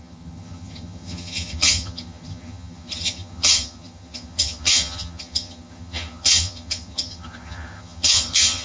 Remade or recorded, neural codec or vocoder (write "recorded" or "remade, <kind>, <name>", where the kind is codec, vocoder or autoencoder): remade, vocoder, HiFi-GAN